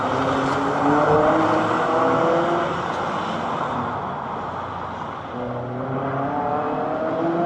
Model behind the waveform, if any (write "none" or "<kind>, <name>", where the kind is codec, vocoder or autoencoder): none